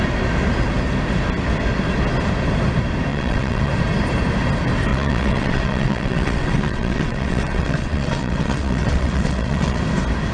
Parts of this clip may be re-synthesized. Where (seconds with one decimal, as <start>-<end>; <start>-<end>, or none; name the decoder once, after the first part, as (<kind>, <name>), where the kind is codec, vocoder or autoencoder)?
3.1-3.7 (vocoder, WaveNeXt); 4.9-9.8

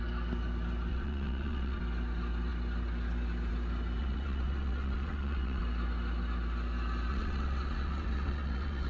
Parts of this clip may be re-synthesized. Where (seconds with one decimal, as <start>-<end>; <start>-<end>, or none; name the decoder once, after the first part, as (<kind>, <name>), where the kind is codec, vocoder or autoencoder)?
0.9-1.8 (vocoder, WaveNeXt); 4.0-5.6; 7.1-8.9

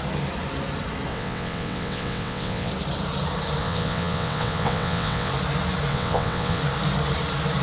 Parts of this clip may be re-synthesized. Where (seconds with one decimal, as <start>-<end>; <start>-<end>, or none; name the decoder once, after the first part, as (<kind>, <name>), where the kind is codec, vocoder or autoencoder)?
1.1-2.7 (vocoder, WaveNeXt); 3.6-5.3; 5.9-6.6

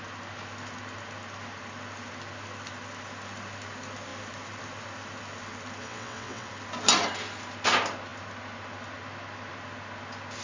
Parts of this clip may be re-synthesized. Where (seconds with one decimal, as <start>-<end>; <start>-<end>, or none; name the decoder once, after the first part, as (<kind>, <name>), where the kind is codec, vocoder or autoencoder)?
5.8-6.5 (vocoder, WaveNeXt)

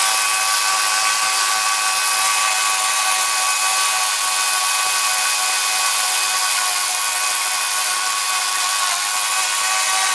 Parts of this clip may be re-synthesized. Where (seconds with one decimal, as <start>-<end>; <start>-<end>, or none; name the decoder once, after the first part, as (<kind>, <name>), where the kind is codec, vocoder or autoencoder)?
none